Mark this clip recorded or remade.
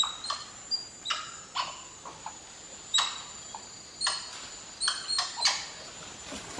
recorded